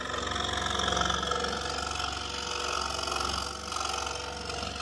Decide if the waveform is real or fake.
real